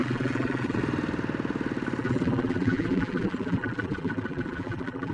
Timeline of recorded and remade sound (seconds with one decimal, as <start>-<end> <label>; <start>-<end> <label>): 0.0-0.8 remade; 0.8-2.0 recorded; 2.0-5.1 remade